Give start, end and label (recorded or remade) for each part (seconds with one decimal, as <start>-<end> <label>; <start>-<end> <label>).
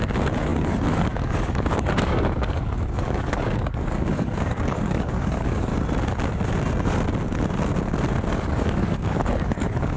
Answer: 0.0-5.7 remade; 5.7-8.3 recorded; 8.3-10.0 remade